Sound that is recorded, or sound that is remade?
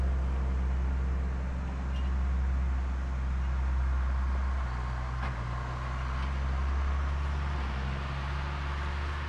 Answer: recorded